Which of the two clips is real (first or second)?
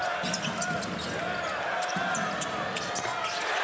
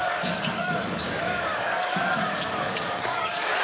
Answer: first